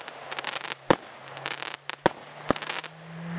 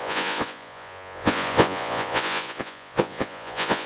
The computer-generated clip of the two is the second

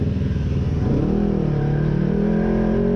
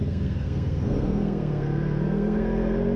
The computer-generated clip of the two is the second